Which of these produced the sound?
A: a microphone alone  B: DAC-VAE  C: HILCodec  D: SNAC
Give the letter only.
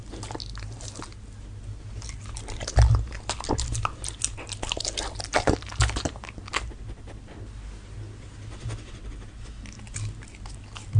A